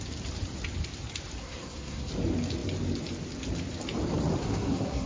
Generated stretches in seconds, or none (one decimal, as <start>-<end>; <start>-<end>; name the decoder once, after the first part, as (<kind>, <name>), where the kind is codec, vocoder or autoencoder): 1.4-2.1 (codec, SNAC); 4.4-5.1